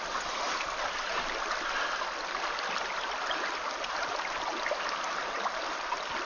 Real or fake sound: real